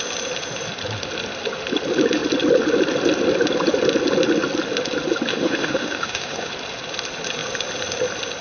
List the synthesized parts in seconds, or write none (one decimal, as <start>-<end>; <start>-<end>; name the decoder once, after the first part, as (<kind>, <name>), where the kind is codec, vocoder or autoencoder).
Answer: 5.3-6.5 (autoencoder, DAC-VAE)